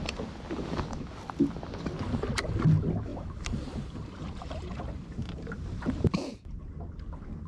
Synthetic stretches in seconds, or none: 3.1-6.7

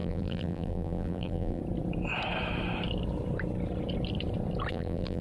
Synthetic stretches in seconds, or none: 0.0-1.6; 4.7-5.2

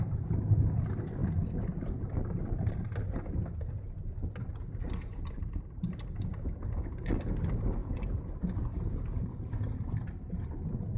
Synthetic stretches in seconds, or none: 1.2-1.9